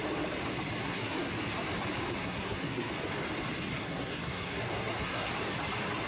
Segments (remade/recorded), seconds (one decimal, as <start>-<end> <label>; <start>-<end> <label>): 0.0-0.8 recorded; 0.8-1.3 remade; 1.3-2.2 recorded; 2.2-2.9 remade; 2.9-3.7 recorded; 3.7-5.3 remade; 5.3-6.1 recorded